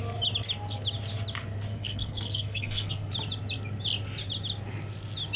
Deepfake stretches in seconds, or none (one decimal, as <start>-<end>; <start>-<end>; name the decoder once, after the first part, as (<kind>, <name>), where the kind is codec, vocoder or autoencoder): 1.7-3.1 (codec, SNAC)